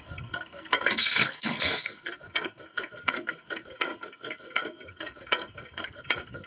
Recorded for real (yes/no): no